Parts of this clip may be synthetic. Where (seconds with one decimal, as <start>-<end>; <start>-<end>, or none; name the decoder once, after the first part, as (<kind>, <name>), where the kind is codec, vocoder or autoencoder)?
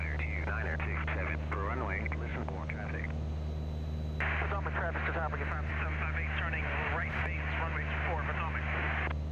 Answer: 6.6-7.2 (vocoder, BigVGAN v2)